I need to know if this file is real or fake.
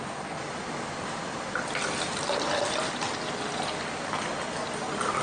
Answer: real